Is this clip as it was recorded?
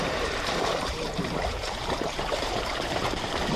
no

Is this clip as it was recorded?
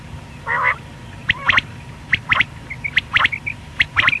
no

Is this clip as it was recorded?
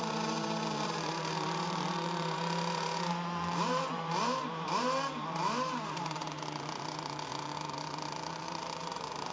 no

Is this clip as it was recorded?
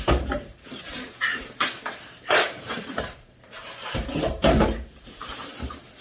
no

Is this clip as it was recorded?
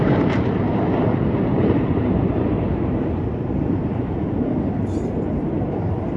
no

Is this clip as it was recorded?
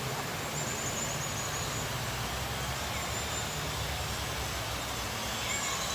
yes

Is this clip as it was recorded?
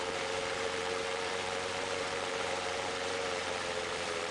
no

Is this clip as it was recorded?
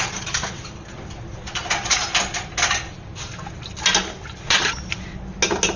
yes